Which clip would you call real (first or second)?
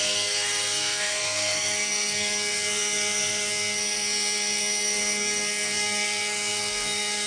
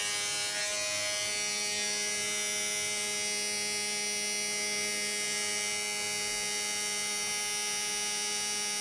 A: second